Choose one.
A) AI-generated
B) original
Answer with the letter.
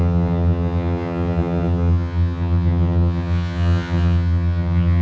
A